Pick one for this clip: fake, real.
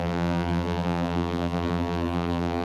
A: fake